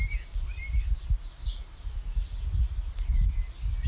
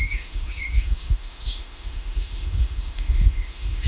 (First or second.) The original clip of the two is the first